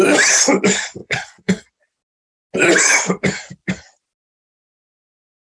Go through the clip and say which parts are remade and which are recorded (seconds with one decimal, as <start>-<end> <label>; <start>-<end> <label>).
0.0-1.0 recorded; 1.0-1.8 remade; 1.8-5.6 recorded